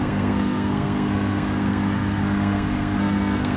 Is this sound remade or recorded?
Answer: remade